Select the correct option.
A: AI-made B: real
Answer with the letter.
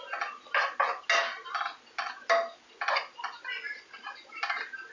B